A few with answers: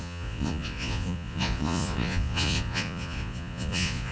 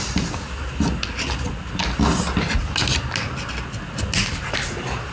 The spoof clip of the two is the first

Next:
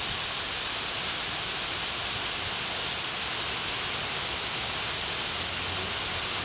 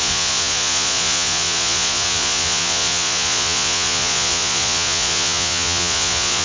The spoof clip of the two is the second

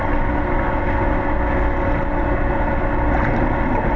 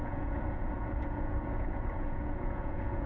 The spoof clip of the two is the second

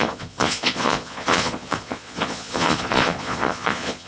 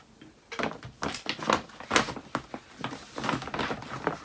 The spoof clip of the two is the first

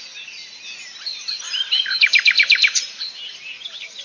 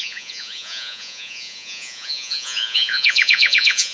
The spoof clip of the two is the second